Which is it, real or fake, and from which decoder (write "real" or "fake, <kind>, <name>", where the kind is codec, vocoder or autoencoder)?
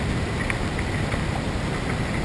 real